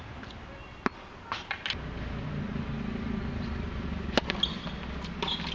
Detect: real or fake real